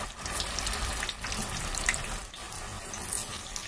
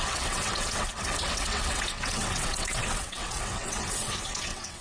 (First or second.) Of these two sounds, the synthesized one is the second